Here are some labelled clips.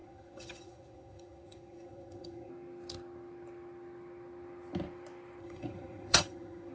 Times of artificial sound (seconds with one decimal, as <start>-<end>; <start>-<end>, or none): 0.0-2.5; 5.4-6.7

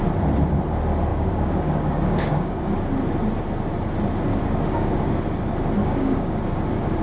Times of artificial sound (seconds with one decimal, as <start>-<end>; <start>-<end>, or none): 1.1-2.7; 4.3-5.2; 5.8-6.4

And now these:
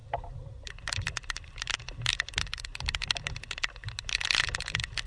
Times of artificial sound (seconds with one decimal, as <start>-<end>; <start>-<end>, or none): 0.0-3.1

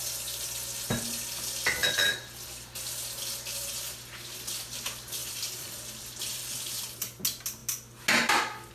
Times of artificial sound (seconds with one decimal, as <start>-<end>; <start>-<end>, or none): 5.2-6.8

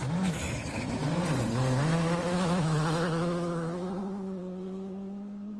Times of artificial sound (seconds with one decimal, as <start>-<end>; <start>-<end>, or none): 0.0-1.0; 1.8-5.6

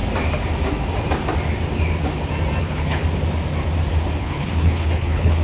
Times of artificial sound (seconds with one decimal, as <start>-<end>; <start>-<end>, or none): 2.6-3.0; 4.2-5.4

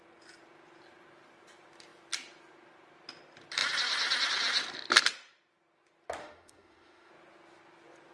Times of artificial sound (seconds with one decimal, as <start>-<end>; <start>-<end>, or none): 6.2-7.1